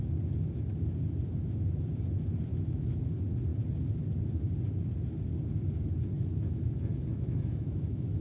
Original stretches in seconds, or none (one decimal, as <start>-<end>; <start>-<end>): 0.0-2.5; 3.0-7.1